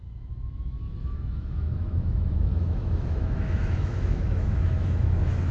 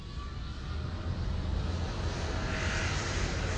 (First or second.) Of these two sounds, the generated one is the first